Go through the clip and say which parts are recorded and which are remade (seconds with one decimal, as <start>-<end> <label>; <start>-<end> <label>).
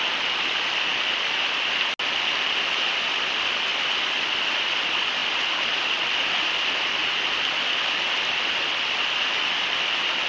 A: 0.0-5.2 recorded; 5.2-6.3 remade; 6.3-10.3 recorded